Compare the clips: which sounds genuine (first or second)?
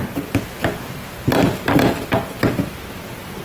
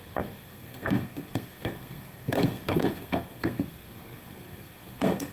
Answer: first